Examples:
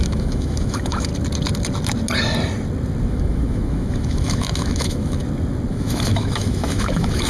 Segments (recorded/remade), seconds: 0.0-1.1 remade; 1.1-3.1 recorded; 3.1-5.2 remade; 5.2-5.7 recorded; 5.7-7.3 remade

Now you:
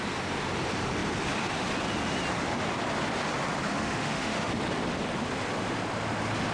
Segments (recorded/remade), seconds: 0.0-3.7 recorded; 3.7-4.5 remade; 4.5-6.5 recorded

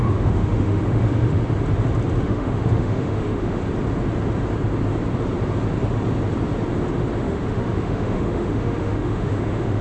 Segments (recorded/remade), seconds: 0.0-1.4 remade; 1.4-2.2 recorded; 2.2-3.6 remade; 3.6-7.2 recorded; 7.2-9.8 remade

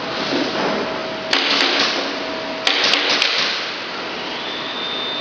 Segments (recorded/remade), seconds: 0.0-5.2 recorded

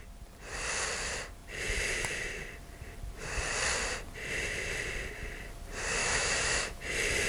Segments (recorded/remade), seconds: 0.0-6.0 recorded; 6.0-6.8 remade; 6.8-7.3 recorded

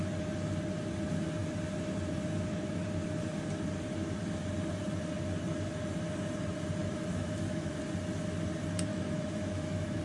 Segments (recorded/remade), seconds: 0.0-6.8 recorded; 6.8-7.8 remade; 7.8-8.9 recorded; 8.9-10.0 remade

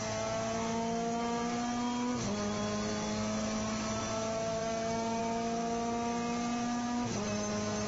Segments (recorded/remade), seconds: 0.0-4.6 recorded; 4.6-5.2 remade; 5.2-7.9 recorded